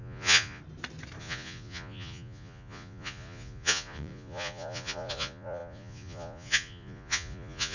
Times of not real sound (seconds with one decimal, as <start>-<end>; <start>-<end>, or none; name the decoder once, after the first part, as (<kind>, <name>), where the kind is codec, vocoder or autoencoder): 0.0-0.6 (vocoder, Vocos); 1.2-7.7